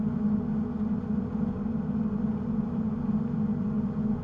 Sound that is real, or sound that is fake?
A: real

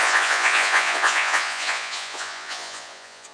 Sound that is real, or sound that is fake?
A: fake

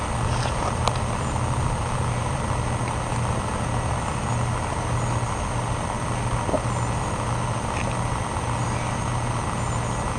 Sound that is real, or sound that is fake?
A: real